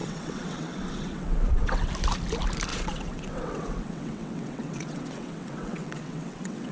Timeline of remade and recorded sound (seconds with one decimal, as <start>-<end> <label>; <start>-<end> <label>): 0.0-1.9 remade; 1.9-2.7 recorded; 2.7-6.7 remade